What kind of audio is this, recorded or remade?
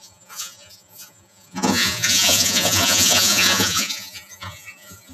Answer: remade